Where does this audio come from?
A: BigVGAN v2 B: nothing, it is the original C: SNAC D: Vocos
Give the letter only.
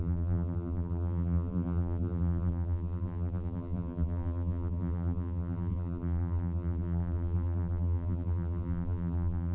A